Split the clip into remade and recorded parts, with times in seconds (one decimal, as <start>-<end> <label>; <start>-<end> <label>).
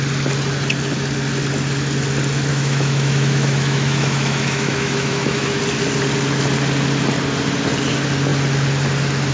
0.0-2.5 recorded; 2.5-5.6 remade; 5.6-9.3 recorded